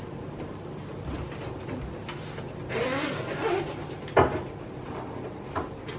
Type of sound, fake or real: real